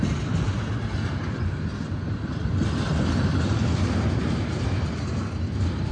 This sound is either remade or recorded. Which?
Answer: recorded